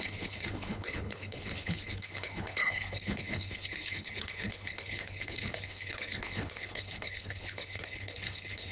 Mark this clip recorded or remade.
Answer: remade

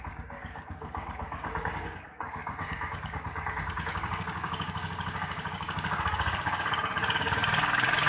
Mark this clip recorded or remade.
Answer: remade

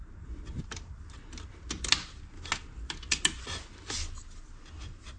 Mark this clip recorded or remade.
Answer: recorded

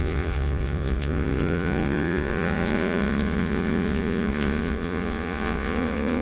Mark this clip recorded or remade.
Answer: remade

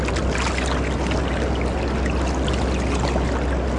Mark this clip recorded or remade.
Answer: recorded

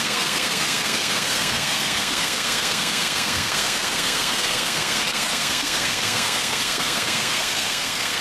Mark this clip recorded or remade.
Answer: remade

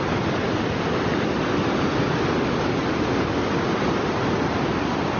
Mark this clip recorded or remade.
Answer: recorded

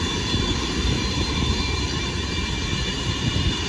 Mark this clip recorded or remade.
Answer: remade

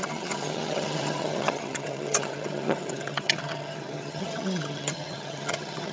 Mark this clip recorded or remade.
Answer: remade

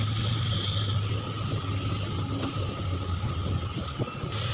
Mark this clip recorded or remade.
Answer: recorded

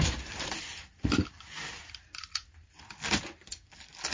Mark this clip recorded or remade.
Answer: recorded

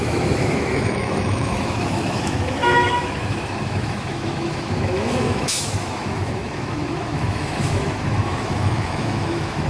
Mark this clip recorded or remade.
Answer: remade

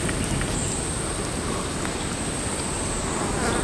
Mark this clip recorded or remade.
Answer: recorded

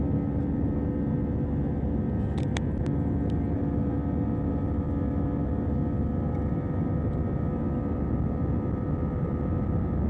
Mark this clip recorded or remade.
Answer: recorded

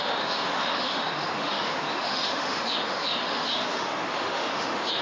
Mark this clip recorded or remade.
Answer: remade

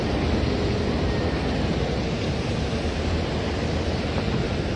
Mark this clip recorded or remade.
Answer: recorded